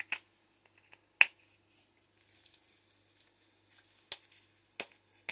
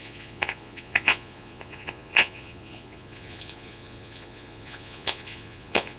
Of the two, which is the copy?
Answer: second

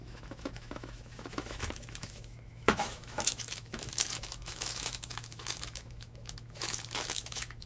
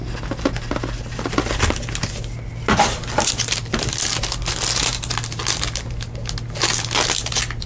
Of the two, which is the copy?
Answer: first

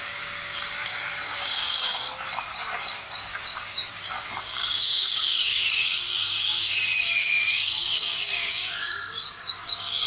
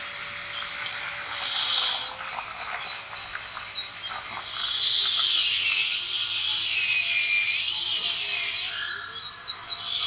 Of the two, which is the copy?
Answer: first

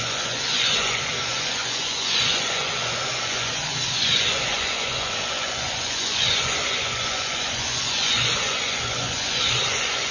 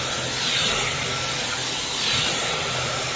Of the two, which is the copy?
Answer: first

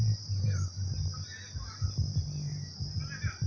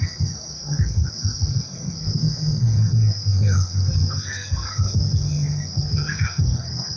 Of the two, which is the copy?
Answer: second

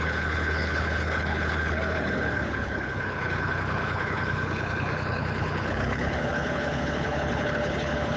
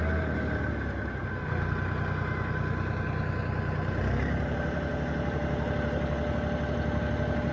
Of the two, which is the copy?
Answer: first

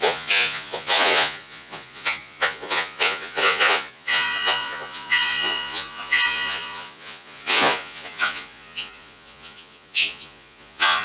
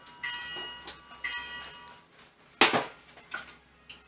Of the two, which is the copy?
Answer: first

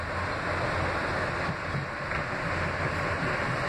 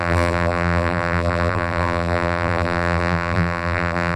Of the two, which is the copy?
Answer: second